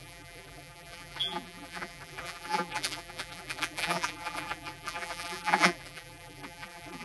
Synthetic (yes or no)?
yes